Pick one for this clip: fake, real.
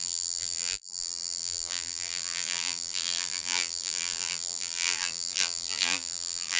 fake